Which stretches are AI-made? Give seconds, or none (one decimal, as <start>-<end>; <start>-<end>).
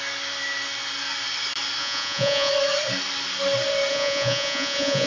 1.8-2.5; 3.9-5.1